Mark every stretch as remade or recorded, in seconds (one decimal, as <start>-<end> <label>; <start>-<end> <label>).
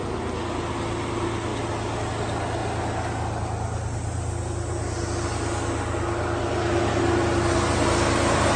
0.0-8.6 recorded